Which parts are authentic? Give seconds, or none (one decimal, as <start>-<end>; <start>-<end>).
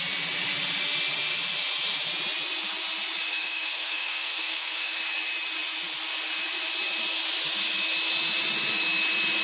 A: 0.0-3.3; 5.0-9.4